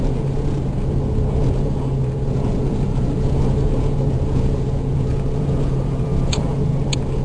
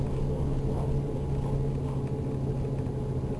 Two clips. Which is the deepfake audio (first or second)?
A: first